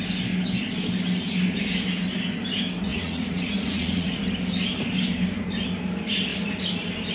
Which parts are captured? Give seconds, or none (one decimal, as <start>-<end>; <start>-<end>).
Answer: 0.0-2.9; 4.2-7.1